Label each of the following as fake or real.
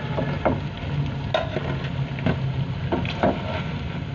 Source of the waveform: real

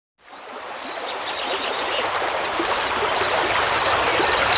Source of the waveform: real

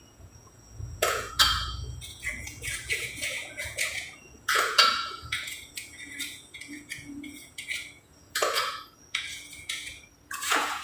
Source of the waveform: fake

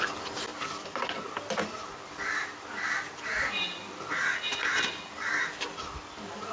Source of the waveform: real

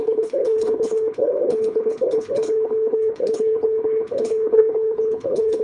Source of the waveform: fake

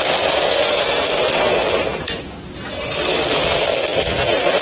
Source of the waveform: real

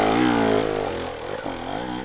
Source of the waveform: real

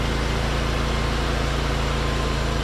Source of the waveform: real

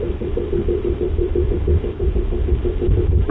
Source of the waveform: real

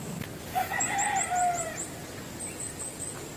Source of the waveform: real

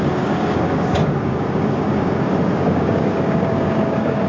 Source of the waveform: fake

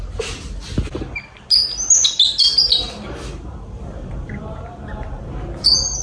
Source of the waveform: real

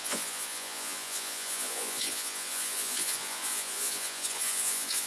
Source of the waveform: fake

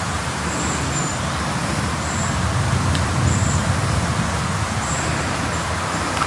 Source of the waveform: real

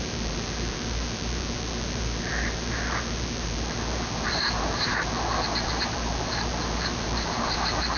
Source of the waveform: fake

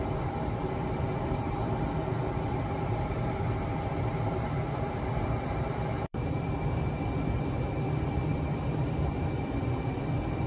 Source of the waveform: fake